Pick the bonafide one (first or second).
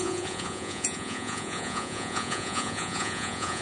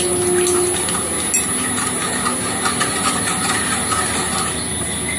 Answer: second